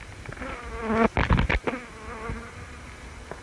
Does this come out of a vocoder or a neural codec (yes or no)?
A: no